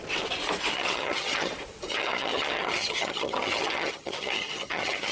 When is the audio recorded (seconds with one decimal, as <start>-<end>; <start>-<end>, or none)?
0.0-0.7; 1.5-1.9